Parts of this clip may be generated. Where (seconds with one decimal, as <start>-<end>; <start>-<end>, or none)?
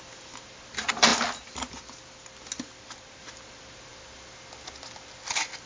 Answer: none